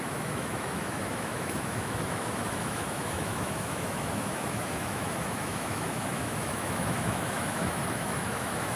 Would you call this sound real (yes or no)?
no